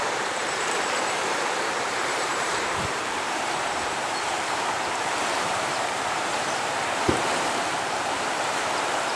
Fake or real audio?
fake